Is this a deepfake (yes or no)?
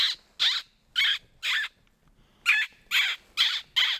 no